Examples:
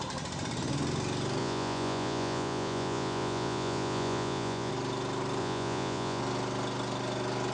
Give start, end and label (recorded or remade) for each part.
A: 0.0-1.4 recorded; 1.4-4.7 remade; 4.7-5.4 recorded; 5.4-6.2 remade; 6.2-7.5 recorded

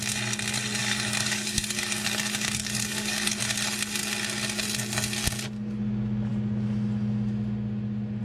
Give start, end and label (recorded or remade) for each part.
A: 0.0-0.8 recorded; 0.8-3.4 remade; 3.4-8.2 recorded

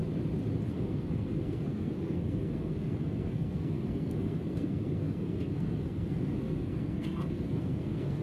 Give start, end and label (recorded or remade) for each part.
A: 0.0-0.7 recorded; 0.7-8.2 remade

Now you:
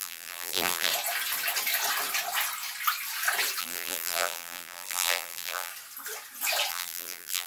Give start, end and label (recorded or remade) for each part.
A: 0.0-0.9 remade; 0.9-3.6 recorded; 3.6-5.7 remade; 5.7-6.7 recorded; 6.7-7.5 remade